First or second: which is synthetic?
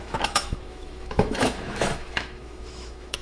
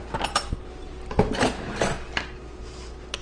first